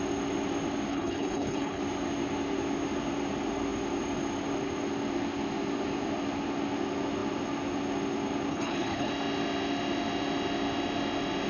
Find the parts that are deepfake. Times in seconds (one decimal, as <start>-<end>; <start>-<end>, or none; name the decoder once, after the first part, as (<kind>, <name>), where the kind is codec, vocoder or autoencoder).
0.9-1.8 (codec, HILCodec); 8.5-9.1